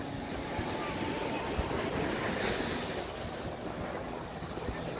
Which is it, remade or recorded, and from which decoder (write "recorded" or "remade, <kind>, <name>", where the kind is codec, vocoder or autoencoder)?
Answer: recorded